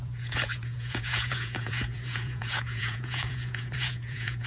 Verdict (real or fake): fake